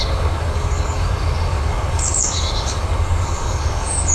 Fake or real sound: fake